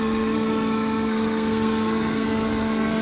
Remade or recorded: remade